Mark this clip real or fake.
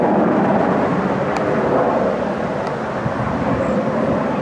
fake